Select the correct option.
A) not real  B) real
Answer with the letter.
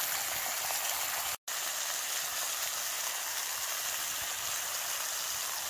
B